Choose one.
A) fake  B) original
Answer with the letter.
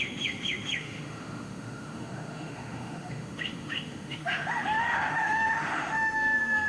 A